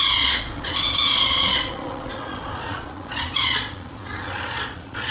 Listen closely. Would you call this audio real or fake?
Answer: fake